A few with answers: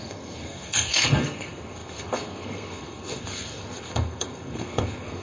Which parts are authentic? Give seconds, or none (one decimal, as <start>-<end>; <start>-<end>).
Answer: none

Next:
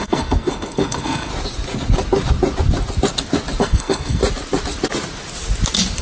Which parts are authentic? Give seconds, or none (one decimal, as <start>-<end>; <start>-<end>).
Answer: 1.3-3.6; 4.2-6.0

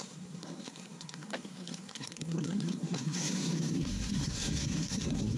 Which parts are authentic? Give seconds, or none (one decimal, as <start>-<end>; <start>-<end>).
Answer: none

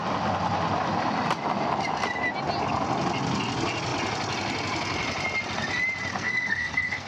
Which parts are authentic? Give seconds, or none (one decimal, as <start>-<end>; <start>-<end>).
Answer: 0.0-6.1